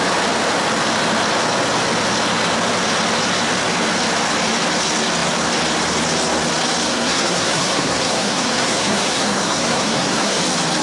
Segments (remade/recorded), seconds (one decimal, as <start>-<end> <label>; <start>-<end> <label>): 0.0-6.9 recorded; 6.9-10.4 remade; 10.4-10.8 recorded